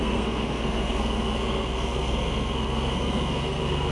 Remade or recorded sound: remade